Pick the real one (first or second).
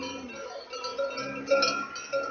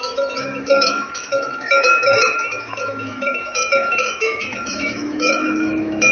first